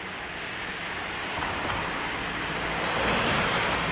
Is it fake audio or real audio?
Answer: real